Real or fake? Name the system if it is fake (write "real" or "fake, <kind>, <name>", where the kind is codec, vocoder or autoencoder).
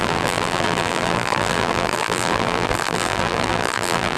fake, vocoder, BigVGAN v2